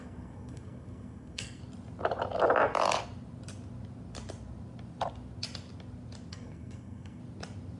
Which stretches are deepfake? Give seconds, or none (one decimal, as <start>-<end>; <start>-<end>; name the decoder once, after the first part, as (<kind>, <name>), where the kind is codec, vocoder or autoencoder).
0.0-1.6 (codec, SNAC); 6.3-7.2